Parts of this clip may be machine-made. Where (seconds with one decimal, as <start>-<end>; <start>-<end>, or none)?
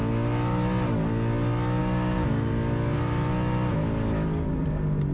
1.8-2.5